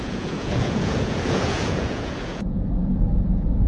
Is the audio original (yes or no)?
no